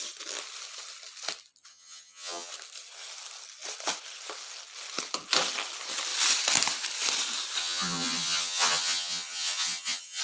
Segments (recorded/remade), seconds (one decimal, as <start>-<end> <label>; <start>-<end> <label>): 0.0-1.7 recorded; 1.7-2.5 remade; 2.5-7.6 recorded; 7.6-10.2 remade